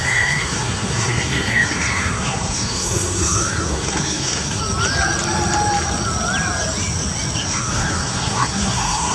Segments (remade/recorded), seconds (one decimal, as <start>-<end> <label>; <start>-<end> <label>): 0.0-4.6 remade; 4.6-7.4 recorded; 7.4-9.1 remade